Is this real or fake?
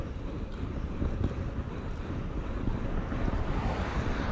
real